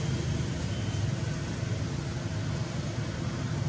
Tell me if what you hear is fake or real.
real